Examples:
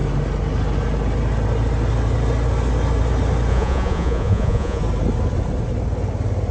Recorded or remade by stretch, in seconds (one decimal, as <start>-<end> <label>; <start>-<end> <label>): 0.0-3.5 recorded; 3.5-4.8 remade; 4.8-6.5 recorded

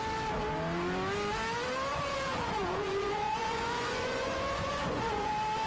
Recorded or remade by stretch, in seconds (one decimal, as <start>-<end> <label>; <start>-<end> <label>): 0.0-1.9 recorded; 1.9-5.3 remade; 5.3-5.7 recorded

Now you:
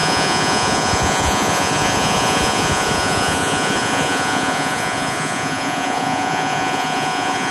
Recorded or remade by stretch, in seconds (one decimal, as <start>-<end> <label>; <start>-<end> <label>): 0.0-7.5 remade

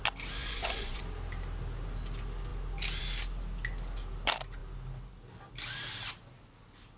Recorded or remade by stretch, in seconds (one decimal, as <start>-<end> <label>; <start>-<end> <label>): 0.0-0.4 recorded; 0.4-1.0 remade; 1.0-7.0 recorded

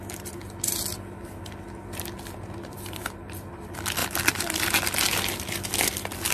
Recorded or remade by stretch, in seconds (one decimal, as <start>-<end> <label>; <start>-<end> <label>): 0.0-6.3 recorded

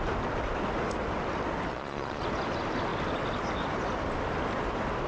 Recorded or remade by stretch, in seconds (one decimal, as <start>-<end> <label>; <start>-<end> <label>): 0.0-1.7 recorded; 1.7-2.2 remade; 2.2-5.1 recorded

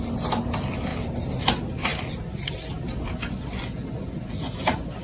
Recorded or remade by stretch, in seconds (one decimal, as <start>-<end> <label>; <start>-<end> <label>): 0.0-5.0 recorded